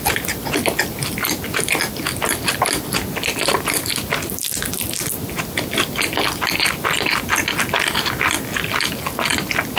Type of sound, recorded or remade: recorded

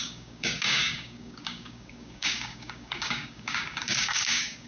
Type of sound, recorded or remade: remade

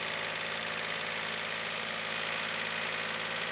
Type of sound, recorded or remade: recorded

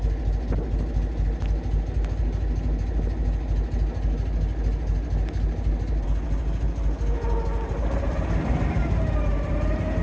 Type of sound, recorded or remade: recorded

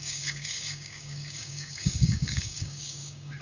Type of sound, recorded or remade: remade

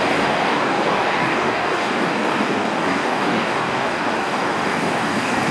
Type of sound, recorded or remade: remade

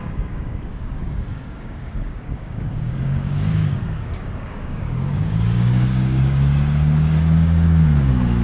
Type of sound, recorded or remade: remade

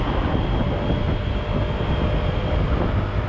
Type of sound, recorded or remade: recorded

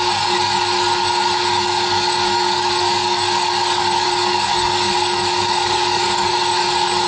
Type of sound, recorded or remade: remade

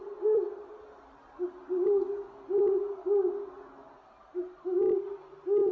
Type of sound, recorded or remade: recorded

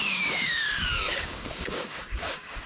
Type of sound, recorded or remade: remade